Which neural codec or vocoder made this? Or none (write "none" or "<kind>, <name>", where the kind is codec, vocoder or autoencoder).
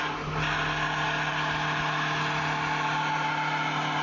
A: none